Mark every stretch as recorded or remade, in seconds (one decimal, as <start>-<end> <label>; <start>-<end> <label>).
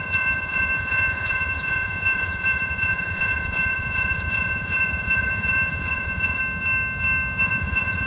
0.0-6.4 remade; 6.4-7.4 recorded; 7.4-8.1 remade